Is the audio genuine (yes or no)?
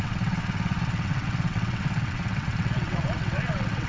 no